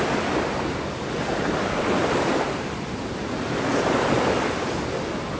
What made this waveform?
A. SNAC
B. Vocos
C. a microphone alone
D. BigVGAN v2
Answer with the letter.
D